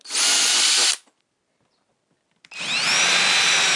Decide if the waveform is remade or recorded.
recorded